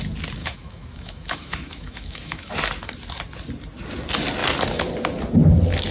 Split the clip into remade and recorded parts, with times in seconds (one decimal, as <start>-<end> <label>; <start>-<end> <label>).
0.0-0.4 recorded; 0.4-2.5 remade; 2.5-5.9 recorded